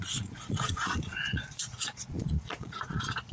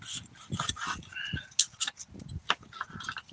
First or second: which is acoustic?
second